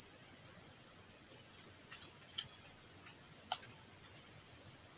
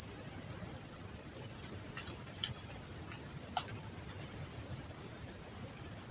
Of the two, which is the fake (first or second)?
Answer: first